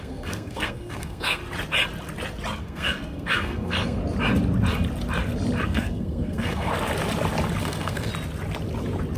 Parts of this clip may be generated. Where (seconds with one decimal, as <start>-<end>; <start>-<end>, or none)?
0.0-1.4; 2.6-4.0; 5.6-6.7; 7.6-8.1